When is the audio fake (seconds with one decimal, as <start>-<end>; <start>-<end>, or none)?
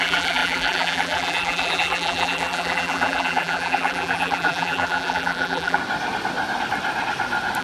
0.0-5.8